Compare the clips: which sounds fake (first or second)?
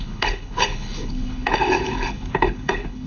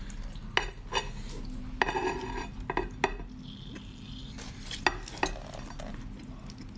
first